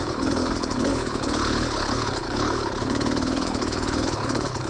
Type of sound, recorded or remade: remade